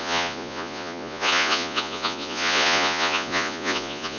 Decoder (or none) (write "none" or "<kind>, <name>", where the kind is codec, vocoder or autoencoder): vocoder, Vocos